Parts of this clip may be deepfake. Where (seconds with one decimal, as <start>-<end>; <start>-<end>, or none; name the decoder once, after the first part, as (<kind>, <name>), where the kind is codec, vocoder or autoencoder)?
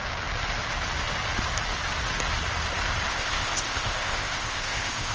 3.1-5.1 (codec, ZipCodec)